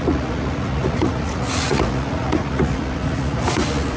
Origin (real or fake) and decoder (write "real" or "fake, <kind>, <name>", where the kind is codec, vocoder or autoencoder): fake, vocoder, Vocos